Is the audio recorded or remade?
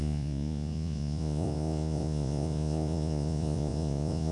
remade